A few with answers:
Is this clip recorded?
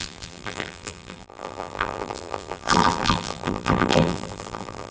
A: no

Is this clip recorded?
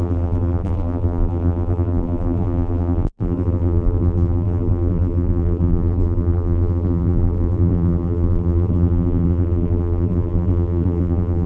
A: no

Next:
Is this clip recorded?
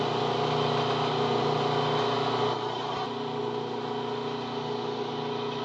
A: yes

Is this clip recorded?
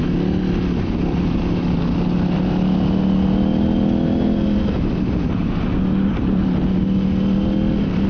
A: yes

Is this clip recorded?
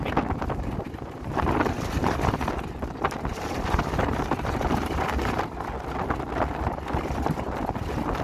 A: no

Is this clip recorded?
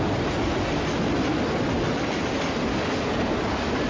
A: yes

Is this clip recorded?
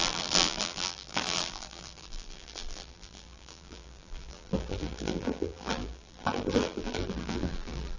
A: no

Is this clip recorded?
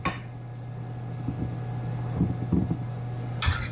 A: yes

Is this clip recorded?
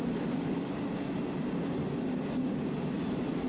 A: yes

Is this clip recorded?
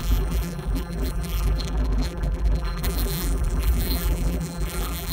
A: no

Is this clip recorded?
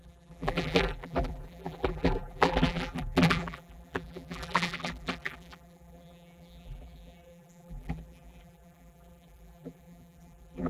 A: no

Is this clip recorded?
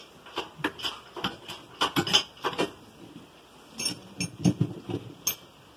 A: yes